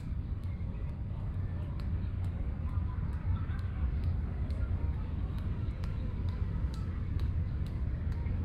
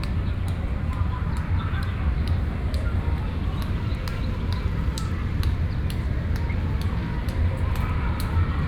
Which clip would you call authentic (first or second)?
second